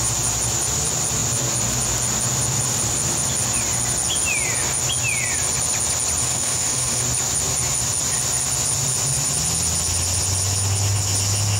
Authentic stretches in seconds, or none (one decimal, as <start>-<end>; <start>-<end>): 0.0-6.2; 7.0-11.6